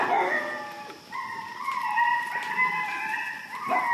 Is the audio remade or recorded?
recorded